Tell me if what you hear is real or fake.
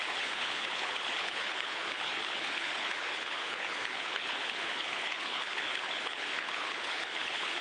fake